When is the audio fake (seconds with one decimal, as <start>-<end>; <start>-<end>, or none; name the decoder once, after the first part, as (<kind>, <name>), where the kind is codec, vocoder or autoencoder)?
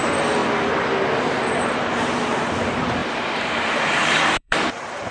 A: 0.0-0.4 (vocoder, BigVGAN v2); 1.5-5.1